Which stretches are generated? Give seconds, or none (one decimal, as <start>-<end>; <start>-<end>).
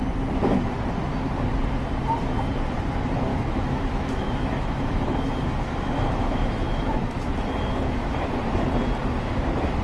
3.3-8.4